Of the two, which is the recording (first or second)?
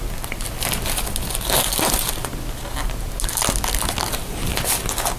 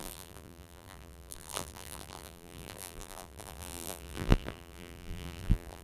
first